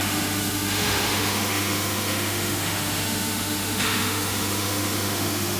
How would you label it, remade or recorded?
remade